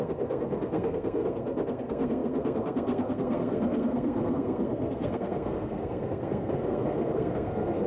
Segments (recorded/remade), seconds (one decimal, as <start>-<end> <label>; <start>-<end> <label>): 0.0-7.9 remade

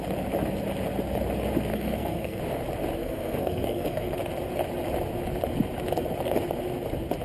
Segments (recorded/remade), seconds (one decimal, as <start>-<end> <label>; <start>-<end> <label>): 0.0-1.7 recorded; 1.7-2.4 remade; 2.4-3.0 recorded; 3.0-4.2 remade; 4.2-7.2 recorded

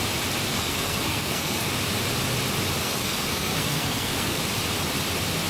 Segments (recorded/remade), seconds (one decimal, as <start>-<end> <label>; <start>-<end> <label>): 0.0-0.5 recorded; 0.5-1.7 remade; 1.7-2.8 recorded; 2.8-4.4 remade; 4.4-5.5 recorded

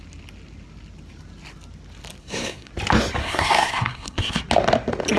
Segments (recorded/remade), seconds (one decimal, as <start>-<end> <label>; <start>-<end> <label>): 0.0-2.2 recorded; 2.2-2.7 remade; 2.7-3.2 recorded; 3.2-4.4 remade; 4.4-5.2 recorded

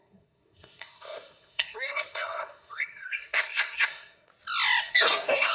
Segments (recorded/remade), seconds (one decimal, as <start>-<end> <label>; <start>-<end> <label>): 0.0-4.3 remade; 4.3-4.8 recorded; 4.8-5.5 remade

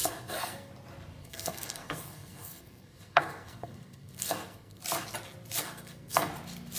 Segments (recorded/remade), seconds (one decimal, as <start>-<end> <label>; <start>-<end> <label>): 0.0-0.7 remade; 0.7-1.2 recorded; 1.2-4.8 remade; 4.8-5.6 recorded; 5.6-6.3 remade; 6.3-6.8 recorded